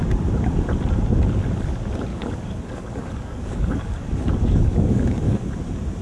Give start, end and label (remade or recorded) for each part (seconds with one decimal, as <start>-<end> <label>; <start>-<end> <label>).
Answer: 0.0-2.1 recorded; 2.1-5.4 remade; 5.4-6.0 recorded